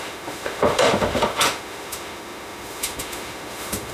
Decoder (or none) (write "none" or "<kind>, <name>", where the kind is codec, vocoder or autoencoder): autoencoder, DAC-VAE